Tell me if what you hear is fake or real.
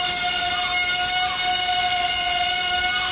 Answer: real